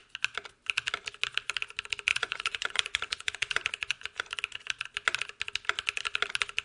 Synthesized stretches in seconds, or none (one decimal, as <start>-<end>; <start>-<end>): 2.1-4.2